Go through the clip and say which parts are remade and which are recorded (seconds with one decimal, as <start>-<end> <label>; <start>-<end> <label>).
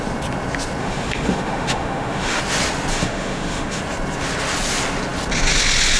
0.0-0.8 recorded; 0.8-2.4 remade; 2.4-2.9 recorded; 2.9-3.8 remade; 3.8-6.0 recorded